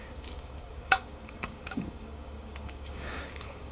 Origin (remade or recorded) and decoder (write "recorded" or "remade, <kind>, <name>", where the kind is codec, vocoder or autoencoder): remade, codec, DAC